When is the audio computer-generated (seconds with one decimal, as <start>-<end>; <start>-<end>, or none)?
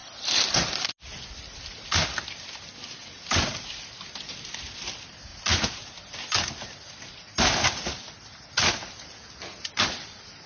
none